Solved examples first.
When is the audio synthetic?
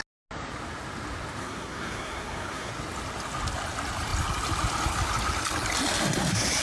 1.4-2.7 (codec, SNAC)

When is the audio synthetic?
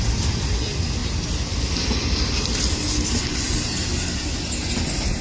none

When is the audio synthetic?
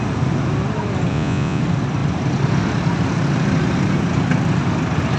1.1-1.6 (vocoder, Vocos)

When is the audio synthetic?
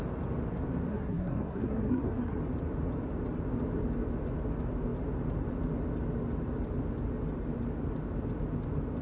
0.9-2.4 (codec, SNAC)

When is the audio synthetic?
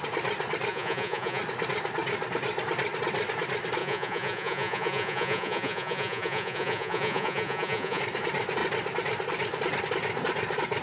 0.7-1.4 (vocoder, Vocos); 3.8-8.0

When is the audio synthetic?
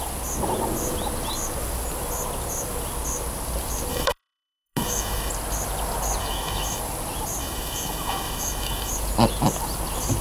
3.9-5.3 (autoencoder, DAC-VAE); 6.2-6.8; 7.4-8.9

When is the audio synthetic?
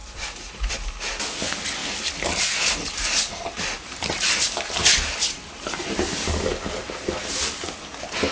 0.0-0.7 (vocoder, Vocos)